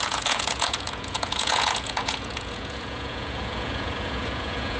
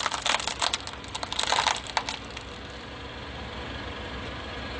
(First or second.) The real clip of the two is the second